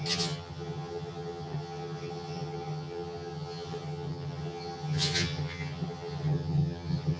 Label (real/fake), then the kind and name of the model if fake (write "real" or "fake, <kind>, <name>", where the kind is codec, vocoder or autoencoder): fake, vocoder, HiFi-GAN